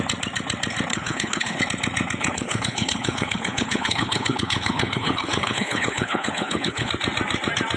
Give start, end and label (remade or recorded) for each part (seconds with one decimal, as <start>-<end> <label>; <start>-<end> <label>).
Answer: 0.0-0.9 recorded; 0.9-1.6 remade; 1.6-2.2 recorded; 2.2-6.9 remade; 6.9-7.8 recorded